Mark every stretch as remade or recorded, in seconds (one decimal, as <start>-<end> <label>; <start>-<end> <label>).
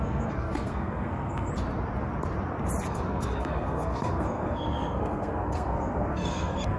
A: 0.0-1.5 remade; 1.5-2.9 recorded; 2.9-6.8 remade